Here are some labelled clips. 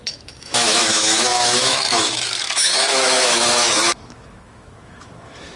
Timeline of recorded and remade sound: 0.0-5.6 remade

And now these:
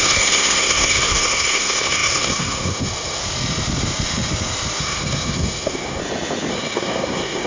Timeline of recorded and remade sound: 0.0-3.2 remade; 3.2-4.8 recorded; 4.8-6.0 remade; 6.0-6.5 recorded; 6.5-7.5 remade

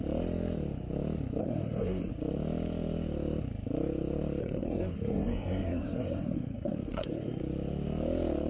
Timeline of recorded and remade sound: 0.0-1.4 recorded; 1.4-2.1 remade; 2.1-4.4 recorded; 4.4-7.4 remade; 7.4-8.5 recorded

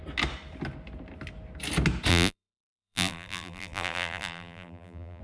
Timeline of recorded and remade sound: 0.0-2.1 recorded; 2.1-5.2 remade

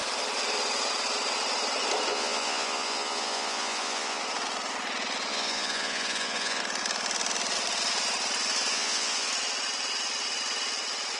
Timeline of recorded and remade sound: 0.0-2.1 recorded; 2.1-4.2 remade; 4.2-5.3 recorded; 5.3-6.6 remade; 6.6-8.7 recorded; 8.7-9.3 remade; 9.3-11.2 recorded

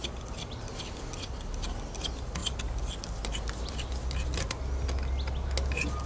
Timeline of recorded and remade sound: 0.0-1.7 recorded; 1.7-2.4 remade; 2.4-6.1 recorded

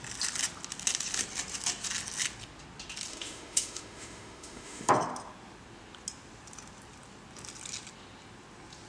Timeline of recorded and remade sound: 0.0-3.1 recorded; 3.1-4.9 remade; 4.9-8.9 recorded